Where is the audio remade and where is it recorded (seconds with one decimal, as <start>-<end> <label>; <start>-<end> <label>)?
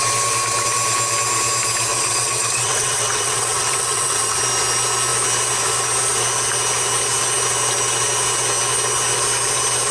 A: 0.0-1.9 recorded; 1.9-4.4 remade; 4.4-9.9 recorded